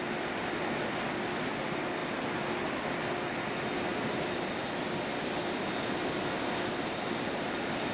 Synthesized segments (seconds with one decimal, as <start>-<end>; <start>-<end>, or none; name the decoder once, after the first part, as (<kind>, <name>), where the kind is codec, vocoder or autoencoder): none